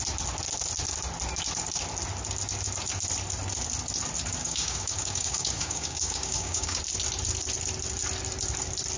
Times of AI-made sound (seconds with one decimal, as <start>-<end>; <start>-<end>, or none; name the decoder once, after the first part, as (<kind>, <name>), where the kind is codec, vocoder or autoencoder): 4.4-6.8 (codec, DAC)